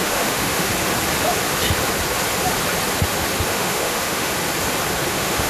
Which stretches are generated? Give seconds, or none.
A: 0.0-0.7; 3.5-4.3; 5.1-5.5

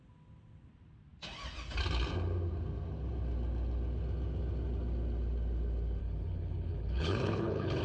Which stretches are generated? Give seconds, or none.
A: 6.0-7.8

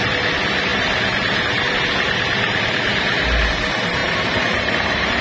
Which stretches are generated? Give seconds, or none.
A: 0.7-1.6; 4.0-5.2

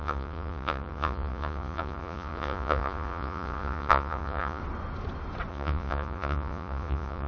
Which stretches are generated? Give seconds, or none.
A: 0.0-4.6; 5.5-7.3

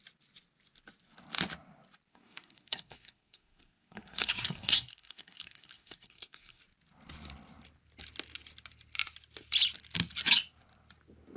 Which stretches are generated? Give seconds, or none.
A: 2.1-6.6

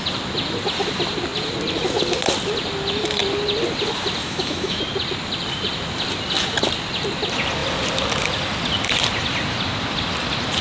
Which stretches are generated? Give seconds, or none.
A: 4.2-4.8